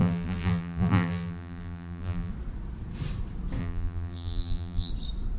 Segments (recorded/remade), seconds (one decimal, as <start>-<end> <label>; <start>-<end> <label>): 0.0-2.3 remade; 2.3-3.6 recorded; 3.6-4.9 remade; 4.9-5.4 recorded